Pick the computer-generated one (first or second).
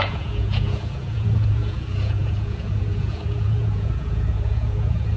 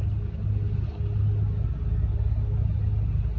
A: first